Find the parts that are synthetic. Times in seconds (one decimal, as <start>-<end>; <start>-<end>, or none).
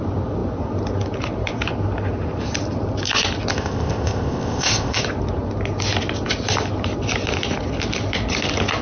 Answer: 3.5-5.0